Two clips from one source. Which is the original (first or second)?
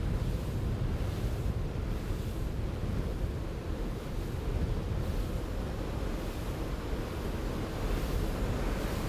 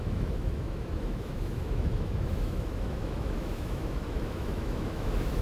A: first